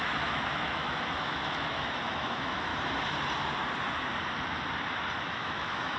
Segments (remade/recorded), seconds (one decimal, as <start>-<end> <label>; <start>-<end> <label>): 0.0-2.7 remade; 2.7-5.2 recorded; 5.2-6.0 remade